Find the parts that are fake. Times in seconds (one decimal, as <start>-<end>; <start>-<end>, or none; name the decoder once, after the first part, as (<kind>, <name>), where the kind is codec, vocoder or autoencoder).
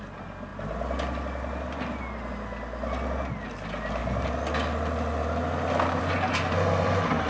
none